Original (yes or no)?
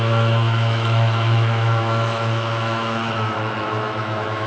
no